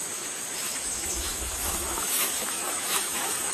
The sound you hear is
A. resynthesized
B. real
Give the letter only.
A